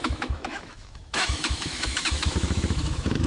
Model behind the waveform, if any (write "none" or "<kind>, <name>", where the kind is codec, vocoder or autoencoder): autoencoder, DAC-VAE